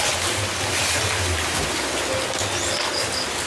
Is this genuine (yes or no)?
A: yes